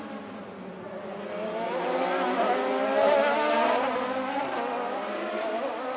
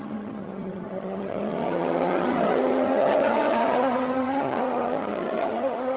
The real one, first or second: first